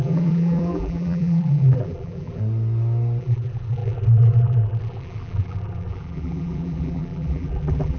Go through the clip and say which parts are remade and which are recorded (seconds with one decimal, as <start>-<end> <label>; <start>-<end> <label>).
0.0-2.4 remade; 2.4-3.2 recorded; 3.2-8.0 remade